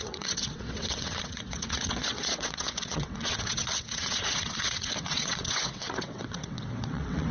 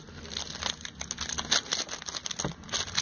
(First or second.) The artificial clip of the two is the first